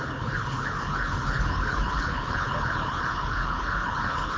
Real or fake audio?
fake